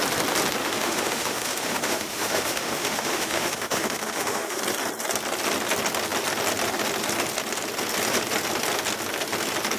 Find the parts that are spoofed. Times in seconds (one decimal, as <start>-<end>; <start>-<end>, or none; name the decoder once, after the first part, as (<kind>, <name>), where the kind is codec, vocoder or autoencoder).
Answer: 0.6-4.6 (autoencoder, DAC-VAE)